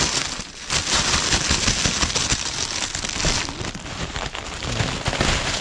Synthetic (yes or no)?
no